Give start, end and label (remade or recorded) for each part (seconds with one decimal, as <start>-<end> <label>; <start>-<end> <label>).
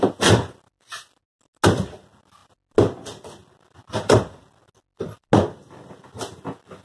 0.0-6.8 recorded